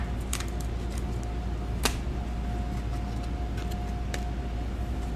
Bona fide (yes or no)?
yes